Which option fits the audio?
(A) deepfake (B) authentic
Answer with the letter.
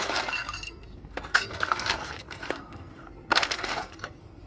A